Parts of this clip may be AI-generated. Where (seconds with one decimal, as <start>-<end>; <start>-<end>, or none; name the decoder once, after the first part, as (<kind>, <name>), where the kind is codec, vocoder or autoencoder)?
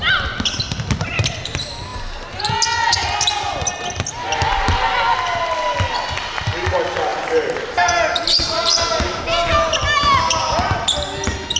7.1-9.2 (vocoder, BigVGAN v2)